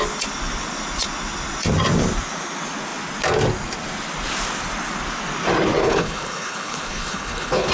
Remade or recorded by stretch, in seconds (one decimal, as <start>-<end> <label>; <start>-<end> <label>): 0.0-5.8 recorded; 5.8-7.7 remade